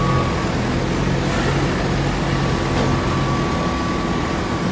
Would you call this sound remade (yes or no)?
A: no